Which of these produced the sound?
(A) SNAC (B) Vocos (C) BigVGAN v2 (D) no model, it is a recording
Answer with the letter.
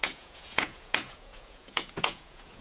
B